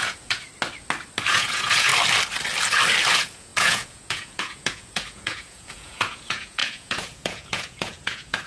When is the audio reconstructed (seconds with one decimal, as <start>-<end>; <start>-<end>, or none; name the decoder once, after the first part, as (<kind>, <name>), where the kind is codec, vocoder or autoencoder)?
0.0-0.5 (vocoder, Vocos); 1.3-1.9; 3.1-8.5